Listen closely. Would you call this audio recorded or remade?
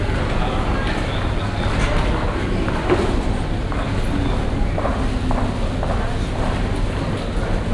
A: recorded